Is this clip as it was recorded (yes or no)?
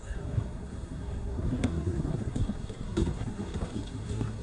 no